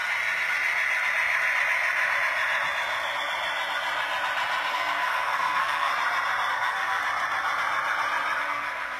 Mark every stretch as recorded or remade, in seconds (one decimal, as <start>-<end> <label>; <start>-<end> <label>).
0.0-4.7 recorded; 4.7-5.9 remade; 5.9-6.5 recorded; 6.5-7.0 remade; 7.0-8.4 recorded; 8.4-9.0 remade